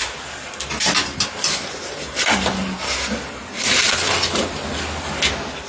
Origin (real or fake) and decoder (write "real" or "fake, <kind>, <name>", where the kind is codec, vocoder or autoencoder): real